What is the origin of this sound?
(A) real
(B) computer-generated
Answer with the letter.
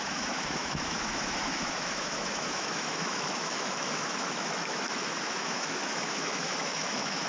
B